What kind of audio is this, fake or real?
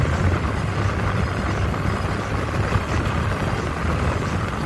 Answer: real